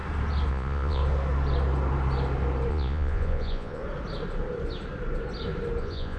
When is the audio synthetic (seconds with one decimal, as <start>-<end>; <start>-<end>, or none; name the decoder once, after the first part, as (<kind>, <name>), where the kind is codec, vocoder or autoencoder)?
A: 0.5-1.0 (vocoder, Vocos); 2.7-3.8; 5.8-6.2